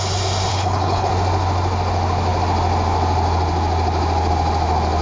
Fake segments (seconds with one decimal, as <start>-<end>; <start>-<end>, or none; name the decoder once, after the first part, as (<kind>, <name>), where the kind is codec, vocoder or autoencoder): 0.5-1.1 (codec, HILCodec)